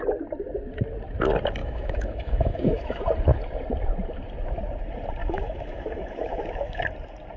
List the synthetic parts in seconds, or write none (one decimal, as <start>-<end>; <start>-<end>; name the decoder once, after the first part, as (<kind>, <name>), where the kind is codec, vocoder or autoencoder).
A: 1.6-3.0 (autoencoder, DAC-VAE); 5.2-6.8